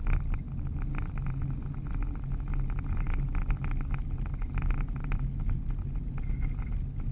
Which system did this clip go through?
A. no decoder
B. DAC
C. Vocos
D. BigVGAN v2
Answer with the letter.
A